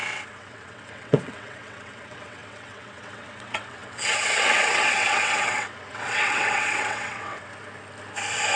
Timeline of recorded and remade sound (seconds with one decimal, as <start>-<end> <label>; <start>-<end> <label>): 0.0-7.5 remade; 7.5-8.6 recorded